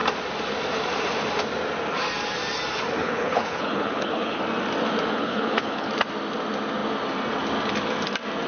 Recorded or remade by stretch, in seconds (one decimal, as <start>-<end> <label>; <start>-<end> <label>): 0.0-3.0 recorded; 3.0-4.4 remade; 4.4-5.1 recorded; 5.1-5.9 remade; 5.9-8.5 recorded